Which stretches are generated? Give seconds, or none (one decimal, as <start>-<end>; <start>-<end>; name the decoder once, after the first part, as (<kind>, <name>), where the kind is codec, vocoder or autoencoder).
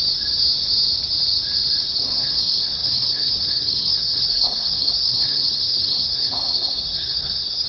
2.0-7.7 (codec, SNAC)